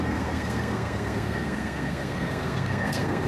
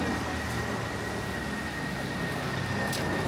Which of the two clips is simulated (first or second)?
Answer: first